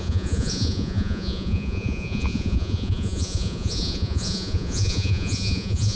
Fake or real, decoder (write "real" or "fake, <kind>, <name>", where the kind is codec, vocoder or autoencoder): fake, vocoder, Vocos